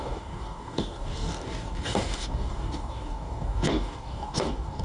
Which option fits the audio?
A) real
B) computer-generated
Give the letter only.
B